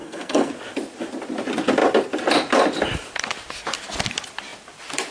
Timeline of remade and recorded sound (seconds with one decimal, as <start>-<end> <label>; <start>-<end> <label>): 0.0-0.5 remade; 0.5-5.1 recorded